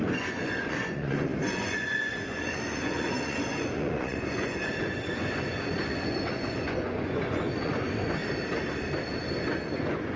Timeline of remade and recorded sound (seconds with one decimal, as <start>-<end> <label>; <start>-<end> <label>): 0.0-8.2 remade; 8.2-9.6 recorded; 9.6-10.2 remade